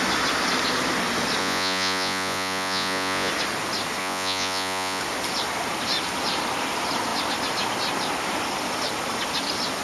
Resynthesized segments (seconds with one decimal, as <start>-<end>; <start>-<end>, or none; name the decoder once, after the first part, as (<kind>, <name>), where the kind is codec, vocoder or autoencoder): 1.4-3.3 (vocoder, Vocos); 4.0-5.0